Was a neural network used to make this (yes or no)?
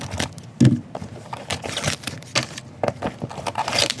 no